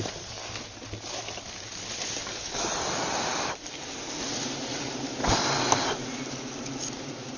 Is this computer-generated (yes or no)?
no